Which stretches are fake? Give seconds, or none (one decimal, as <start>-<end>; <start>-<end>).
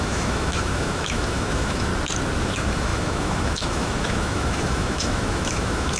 0.0-1.9; 2.4-6.0